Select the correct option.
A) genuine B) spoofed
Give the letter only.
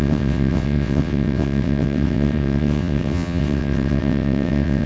B